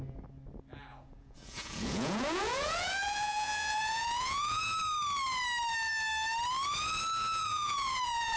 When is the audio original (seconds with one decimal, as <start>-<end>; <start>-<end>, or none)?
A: 0.0-0.9; 4.6-7.2